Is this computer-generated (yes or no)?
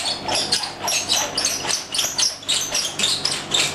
no